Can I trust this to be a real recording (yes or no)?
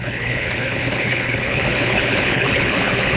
no